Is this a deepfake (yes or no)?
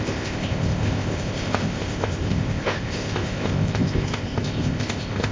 yes